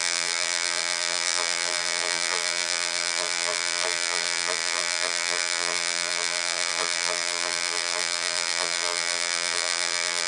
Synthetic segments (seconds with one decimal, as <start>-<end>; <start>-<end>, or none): 0.0-10.3